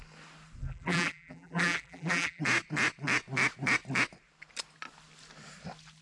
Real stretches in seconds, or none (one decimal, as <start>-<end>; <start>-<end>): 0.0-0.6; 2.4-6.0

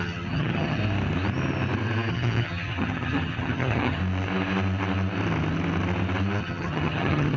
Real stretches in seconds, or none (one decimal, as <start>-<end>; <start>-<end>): 0.8-2.1; 4.0-6.4

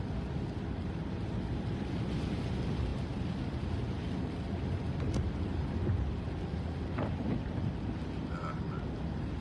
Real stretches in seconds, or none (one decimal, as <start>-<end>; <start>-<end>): 0.0-9.4

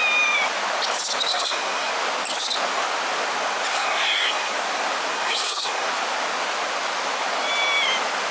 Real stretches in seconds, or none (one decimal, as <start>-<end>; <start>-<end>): 0.0-1.3; 1.9-3.7; 4.5-5.1; 5.9-8.3